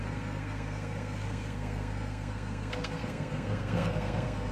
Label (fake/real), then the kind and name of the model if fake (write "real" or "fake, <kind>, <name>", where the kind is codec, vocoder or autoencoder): fake, codec, SNAC